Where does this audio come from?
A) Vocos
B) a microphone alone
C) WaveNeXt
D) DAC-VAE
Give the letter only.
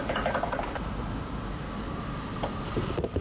B